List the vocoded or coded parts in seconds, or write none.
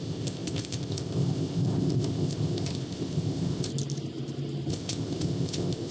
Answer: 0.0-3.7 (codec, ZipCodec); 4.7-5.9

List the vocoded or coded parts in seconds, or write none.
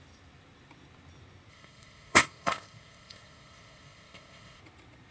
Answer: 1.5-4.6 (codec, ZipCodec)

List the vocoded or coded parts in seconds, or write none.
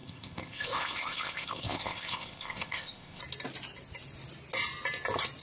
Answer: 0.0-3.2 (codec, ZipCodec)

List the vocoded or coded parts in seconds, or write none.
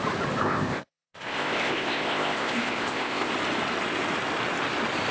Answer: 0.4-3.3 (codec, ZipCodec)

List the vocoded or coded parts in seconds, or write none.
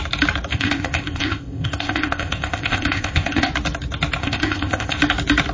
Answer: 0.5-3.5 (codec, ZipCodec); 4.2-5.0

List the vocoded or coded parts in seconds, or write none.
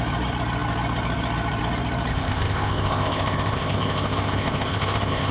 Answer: 2.1-5.3 (codec, ZipCodec)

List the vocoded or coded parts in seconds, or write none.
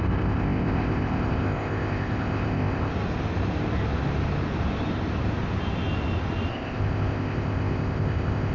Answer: 0.0-2.9 (codec, ZipCodec); 6.5-8.5